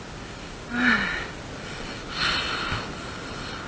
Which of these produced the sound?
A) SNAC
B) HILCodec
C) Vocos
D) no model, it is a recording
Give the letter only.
D